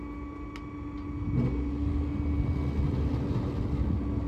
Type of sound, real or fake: real